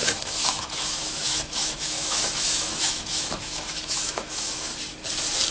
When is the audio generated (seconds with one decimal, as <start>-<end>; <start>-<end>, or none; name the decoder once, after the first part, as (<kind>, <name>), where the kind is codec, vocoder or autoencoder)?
0.0-4.7 (autoencoder, DAC-VAE)